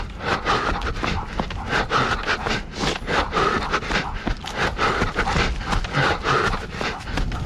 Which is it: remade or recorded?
recorded